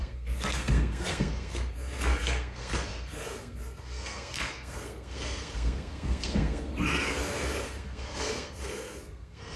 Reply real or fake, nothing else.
fake